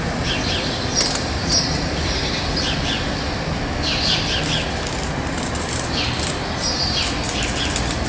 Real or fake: fake